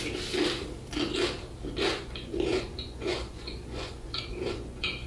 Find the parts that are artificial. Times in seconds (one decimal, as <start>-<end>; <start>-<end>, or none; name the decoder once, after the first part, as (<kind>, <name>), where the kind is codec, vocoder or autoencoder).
1.9-5.1 (vocoder, Vocos)